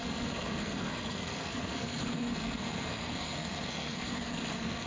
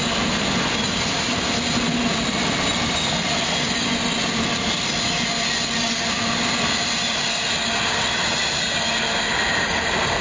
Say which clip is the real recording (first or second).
second